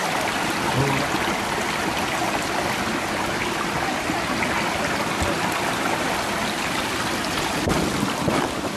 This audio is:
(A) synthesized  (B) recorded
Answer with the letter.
B